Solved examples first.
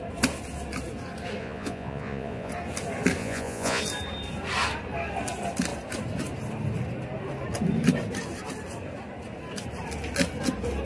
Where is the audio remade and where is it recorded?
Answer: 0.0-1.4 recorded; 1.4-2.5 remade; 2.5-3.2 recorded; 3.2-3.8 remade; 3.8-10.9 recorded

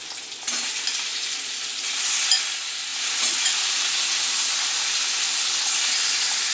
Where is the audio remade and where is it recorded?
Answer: 0.0-2.9 recorded; 2.9-4.5 remade; 4.5-6.5 recorded

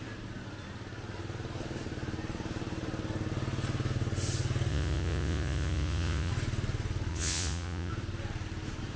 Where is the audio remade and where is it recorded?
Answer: 0.0-4.7 recorded; 4.7-6.3 remade; 6.3-7.1 recorded; 7.1-7.9 remade; 7.9-9.0 recorded

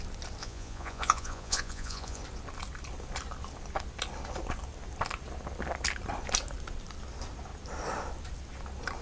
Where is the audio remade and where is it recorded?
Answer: 0.0-0.4 recorded; 0.4-2.2 remade; 2.2-9.0 recorded